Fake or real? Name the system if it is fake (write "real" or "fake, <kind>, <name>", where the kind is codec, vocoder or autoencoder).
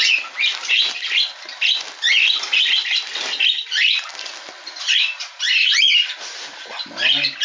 real